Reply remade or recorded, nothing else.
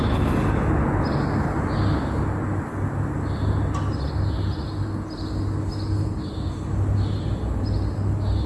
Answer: recorded